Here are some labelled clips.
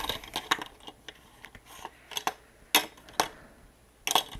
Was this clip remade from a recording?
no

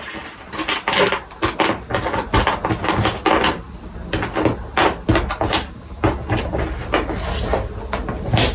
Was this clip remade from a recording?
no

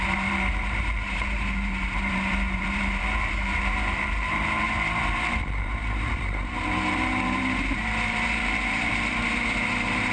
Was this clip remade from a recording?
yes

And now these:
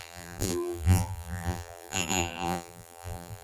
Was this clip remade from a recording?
yes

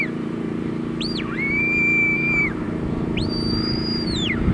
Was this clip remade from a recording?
yes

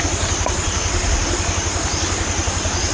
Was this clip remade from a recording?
no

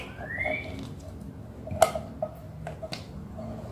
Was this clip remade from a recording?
no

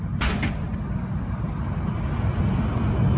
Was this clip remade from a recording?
no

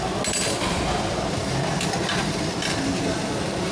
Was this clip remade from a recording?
no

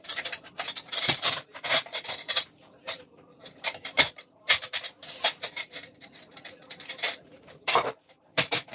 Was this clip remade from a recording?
yes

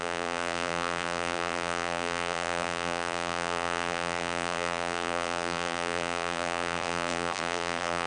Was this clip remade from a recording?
yes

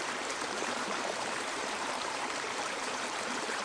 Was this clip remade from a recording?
yes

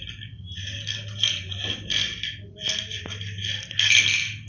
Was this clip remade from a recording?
no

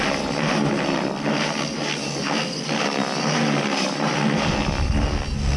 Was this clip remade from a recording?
no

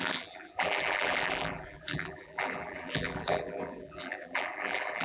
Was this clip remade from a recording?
yes